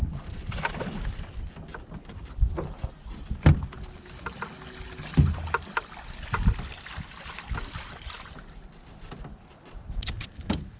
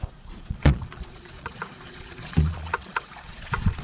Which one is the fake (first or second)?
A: second